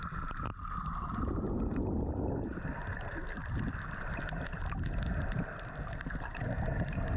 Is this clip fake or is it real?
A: fake